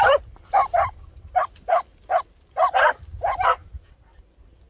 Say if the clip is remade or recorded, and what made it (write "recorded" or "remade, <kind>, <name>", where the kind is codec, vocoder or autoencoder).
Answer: remade, vocoder, BigVGAN v2